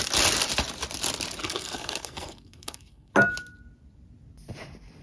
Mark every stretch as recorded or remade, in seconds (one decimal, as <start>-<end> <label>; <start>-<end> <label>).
0.0-1.4 recorded; 1.4-3.1 remade; 3.1-5.0 recorded